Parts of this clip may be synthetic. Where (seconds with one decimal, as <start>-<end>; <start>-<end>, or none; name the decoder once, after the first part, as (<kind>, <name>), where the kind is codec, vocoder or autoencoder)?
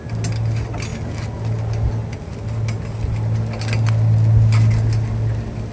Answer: none